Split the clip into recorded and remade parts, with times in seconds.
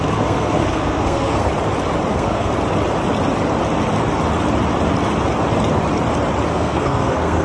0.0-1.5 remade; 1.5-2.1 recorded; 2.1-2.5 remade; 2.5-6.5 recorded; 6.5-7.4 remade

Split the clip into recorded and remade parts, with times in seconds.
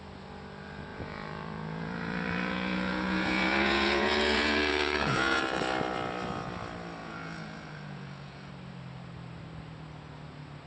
0.0-0.9 recorded; 0.9-5.4 remade; 5.4-7.0 recorded; 7.0-8.5 remade; 8.5-10.7 recorded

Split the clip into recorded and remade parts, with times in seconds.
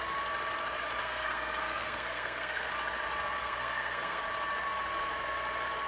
0.0-1.0 recorded; 1.0-2.7 remade; 2.7-3.4 recorded; 3.4-4.2 remade; 4.2-5.9 recorded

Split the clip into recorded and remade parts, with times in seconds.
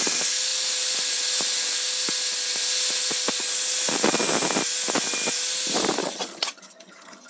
0.0-6.0 recorded; 6.0-7.3 remade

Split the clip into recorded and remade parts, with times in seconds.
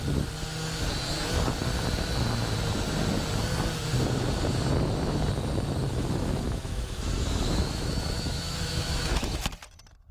0.0-5.9 recorded; 5.9-9.5 remade; 9.5-10.1 recorded